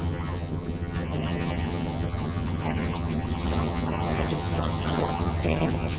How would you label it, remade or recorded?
remade